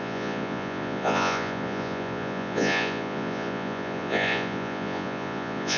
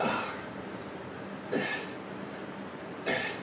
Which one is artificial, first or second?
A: first